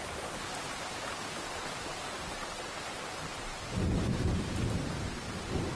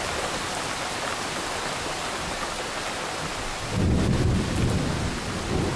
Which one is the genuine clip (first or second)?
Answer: second